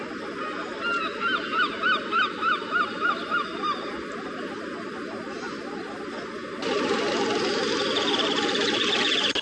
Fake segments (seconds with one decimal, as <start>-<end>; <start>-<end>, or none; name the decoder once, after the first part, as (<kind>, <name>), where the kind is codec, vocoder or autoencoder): none